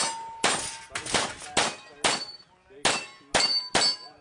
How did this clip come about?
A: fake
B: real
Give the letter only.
B